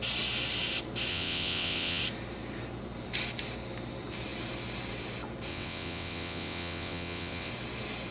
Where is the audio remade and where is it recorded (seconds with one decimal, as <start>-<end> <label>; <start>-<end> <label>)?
0.0-1.1 recorded; 1.1-2.0 remade; 2.0-5.5 recorded; 5.5-7.5 remade; 7.5-8.1 recorded